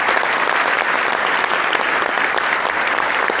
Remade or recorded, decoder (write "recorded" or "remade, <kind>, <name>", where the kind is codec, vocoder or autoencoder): recorded